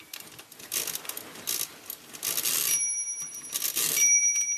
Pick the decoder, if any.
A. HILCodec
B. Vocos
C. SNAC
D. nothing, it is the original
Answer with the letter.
D